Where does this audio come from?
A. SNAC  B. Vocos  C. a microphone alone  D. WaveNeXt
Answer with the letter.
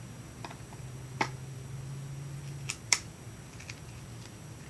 C